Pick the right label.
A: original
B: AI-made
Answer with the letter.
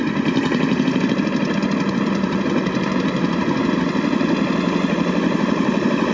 B